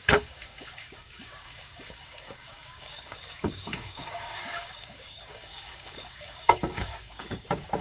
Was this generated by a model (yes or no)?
yes